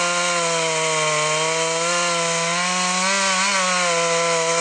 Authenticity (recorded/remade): recorded